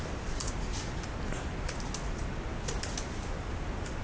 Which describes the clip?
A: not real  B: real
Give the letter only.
B